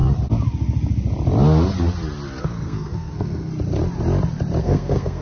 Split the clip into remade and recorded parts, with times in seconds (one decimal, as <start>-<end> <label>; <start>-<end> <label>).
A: 0.0-2.4 recorded; 2.4-3.5 remade; 3.5-4.6 recorded; 4.6-5.2 remade